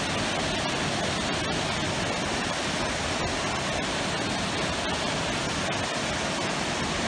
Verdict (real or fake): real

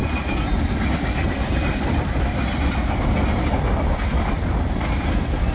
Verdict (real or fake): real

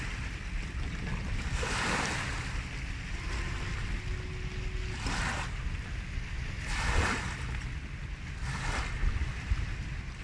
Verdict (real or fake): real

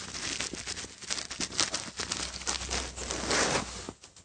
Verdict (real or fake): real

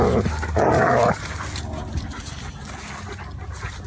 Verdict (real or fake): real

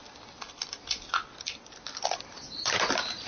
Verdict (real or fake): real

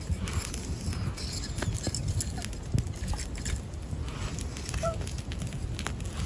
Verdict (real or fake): real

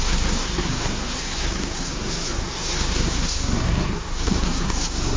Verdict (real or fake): fake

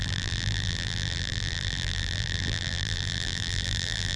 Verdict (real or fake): fake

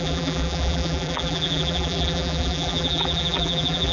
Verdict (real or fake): fake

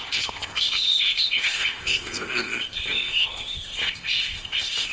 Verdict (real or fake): fake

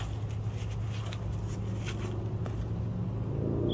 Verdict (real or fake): real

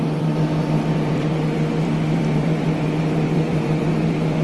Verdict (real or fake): fake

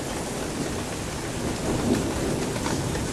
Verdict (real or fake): real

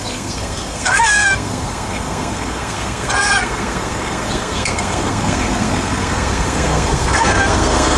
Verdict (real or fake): fake